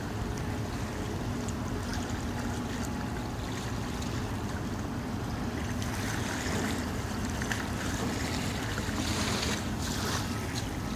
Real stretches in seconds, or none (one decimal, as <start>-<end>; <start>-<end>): 0.0-11.0